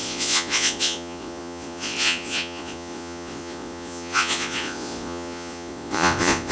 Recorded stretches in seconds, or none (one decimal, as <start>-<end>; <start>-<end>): none